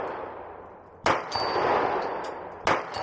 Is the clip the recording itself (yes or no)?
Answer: yes